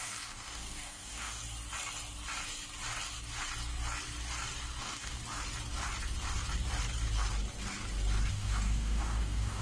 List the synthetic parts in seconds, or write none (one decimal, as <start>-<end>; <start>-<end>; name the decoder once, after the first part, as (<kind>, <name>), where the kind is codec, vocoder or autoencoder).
0.0-1.4 (codec, DAC); 4.8-5.2; 8.3-9.6